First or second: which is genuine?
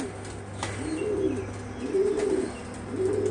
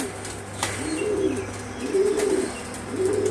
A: first